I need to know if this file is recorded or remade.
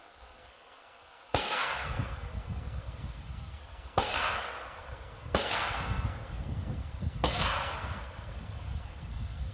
remade